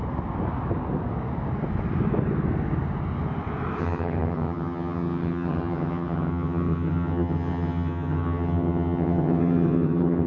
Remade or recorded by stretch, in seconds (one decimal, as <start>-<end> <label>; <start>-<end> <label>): 0.0-3.8 recorded; 3.8-10.3 remade